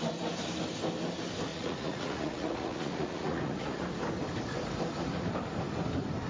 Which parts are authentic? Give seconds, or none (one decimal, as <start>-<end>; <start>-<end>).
0.0-1.5; 3.8-6.3

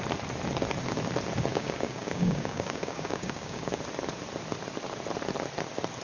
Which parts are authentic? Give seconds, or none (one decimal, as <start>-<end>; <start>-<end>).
0.0-1.5; 3.8-6.0